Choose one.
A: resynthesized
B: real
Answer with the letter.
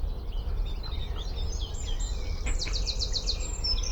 B